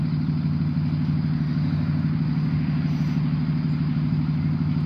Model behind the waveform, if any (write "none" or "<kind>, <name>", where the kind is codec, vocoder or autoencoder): none